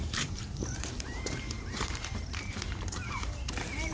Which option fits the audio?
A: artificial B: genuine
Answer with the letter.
A